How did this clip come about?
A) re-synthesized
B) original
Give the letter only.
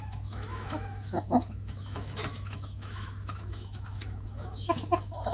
A